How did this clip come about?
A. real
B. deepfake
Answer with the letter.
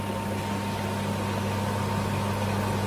A